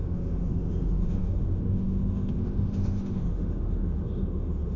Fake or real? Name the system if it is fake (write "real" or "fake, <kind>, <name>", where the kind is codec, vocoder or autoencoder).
fake, autoencoder, DAC-VAE